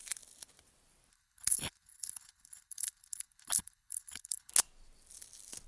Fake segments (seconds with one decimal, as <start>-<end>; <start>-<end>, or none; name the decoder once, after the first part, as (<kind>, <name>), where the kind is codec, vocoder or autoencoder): 1.1-4.5 (codec, HILCodec)